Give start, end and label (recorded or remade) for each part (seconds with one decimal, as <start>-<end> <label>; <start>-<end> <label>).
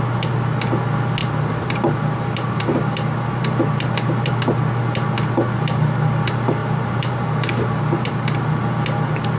0.0-1.2 recorded; 1.2-4.3 remade; 4.3-6.6 recorded; 6.6-8.1 remade; 8.1-9.4 recorded